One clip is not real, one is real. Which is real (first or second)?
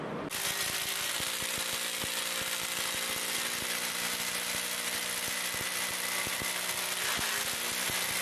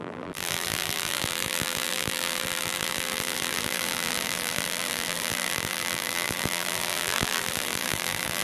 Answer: first